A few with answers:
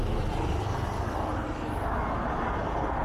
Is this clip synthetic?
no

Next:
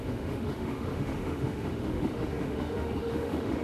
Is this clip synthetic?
yes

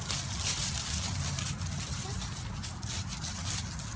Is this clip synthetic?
no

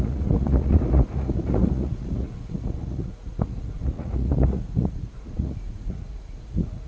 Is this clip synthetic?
yes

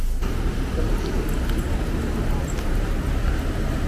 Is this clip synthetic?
no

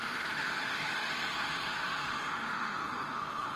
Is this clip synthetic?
yes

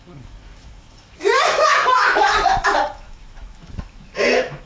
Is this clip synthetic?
yes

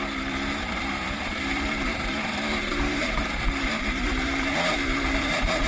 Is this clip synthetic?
yes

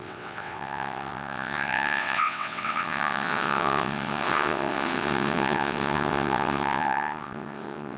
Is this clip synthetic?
yes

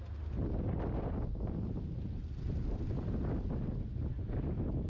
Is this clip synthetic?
no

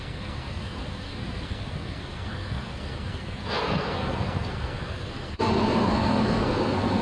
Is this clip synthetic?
yes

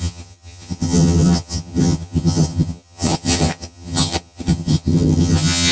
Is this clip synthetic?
yes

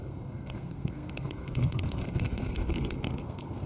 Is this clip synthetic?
yes